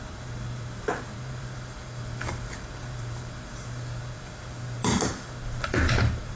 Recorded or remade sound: remade